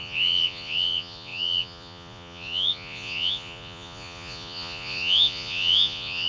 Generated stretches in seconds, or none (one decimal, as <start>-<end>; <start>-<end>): 0.0-6.3

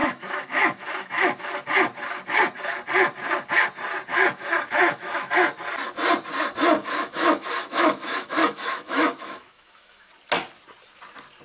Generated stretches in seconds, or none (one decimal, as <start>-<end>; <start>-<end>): 0.0-1.4; 4.1-5.3; 6.8-10.1